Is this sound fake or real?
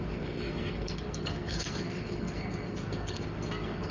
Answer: fake